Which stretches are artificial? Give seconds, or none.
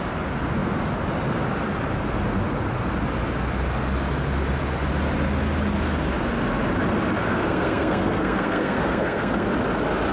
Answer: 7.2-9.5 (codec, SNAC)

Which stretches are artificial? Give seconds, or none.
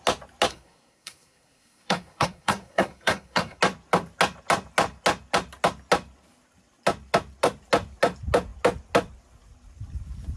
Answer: 0.5-3.6 (codec, SNAC)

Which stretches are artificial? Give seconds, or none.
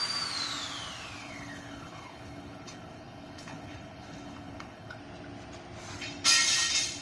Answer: 1.2-5.0 (codec, HILCodec)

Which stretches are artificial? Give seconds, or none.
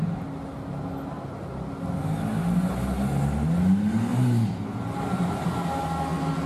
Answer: none